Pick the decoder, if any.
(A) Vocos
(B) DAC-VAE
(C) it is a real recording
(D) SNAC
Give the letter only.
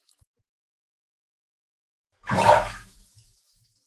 B